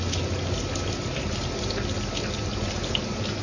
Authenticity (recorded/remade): recorded